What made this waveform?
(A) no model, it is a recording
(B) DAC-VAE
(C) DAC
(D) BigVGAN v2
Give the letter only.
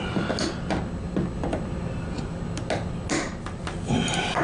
A